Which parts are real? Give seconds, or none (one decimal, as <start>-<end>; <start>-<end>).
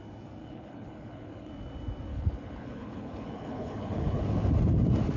0.0-0.4; 1.5-2.1; 4.2-5.2